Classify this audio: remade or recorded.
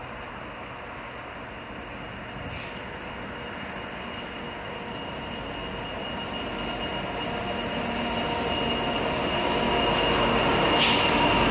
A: recorded